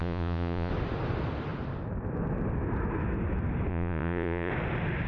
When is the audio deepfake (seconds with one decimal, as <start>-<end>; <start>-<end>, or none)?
0.0-0.7; 3.7-4.5